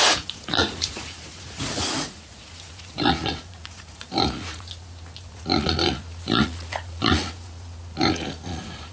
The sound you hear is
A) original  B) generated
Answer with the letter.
B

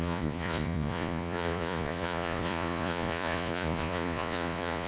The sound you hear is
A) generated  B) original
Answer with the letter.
A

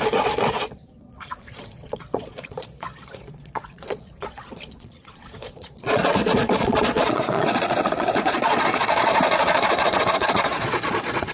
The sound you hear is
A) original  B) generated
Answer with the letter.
B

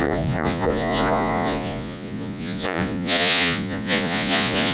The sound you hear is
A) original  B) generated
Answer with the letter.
B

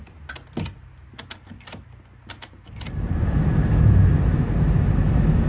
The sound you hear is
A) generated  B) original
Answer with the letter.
B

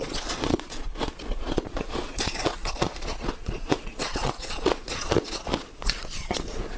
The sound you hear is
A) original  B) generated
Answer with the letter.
B